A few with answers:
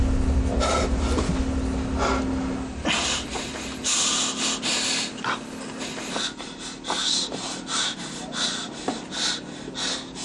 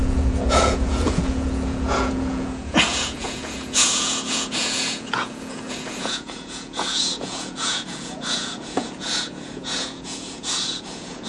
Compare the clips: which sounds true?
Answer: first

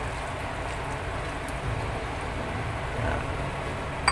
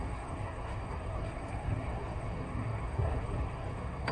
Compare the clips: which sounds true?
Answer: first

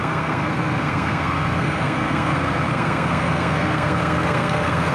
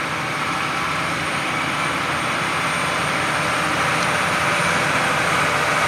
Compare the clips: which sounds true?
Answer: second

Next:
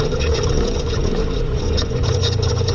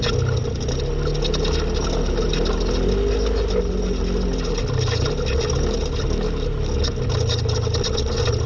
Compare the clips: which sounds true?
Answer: second